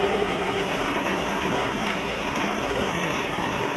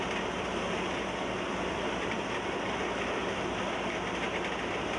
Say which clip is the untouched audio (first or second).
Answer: second